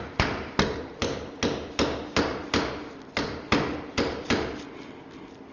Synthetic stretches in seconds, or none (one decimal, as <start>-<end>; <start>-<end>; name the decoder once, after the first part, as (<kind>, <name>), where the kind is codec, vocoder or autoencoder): none